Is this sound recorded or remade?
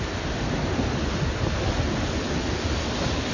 recorded